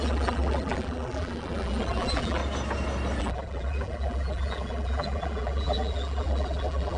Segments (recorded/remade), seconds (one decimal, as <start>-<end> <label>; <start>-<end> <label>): 0.0-2.4 remade; 2.4-3.2 recorded; 3.2-7.0 remade